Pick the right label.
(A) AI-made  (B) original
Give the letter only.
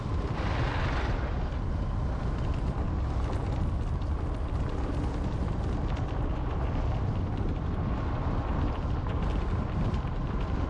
B